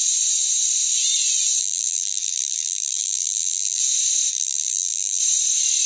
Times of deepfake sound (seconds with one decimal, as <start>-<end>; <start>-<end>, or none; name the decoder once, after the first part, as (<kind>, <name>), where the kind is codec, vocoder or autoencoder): 1.6-3.8 (vocoder, BigVGAN v2); 4.3-5.2

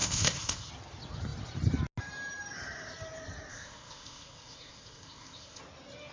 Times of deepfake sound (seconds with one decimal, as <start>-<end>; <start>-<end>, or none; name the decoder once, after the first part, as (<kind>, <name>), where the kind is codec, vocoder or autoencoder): 0.0-0.7 (codec, ZipCodec); 3.5-5.6